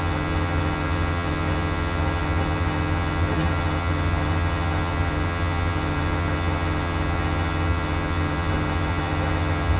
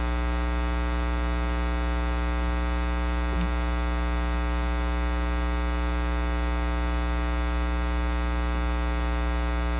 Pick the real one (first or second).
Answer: second